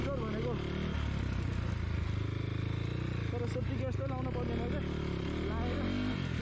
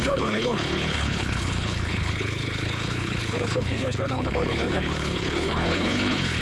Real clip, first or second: first